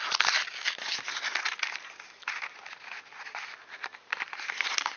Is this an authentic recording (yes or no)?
yes